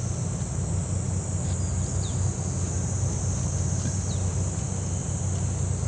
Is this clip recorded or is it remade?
recorded